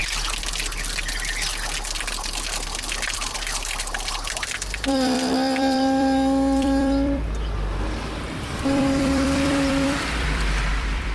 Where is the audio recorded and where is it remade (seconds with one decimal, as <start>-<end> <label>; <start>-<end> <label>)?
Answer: 0.0-2.9 recorded; 2.9-11.1 remade